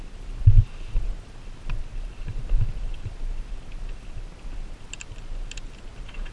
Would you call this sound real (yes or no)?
yes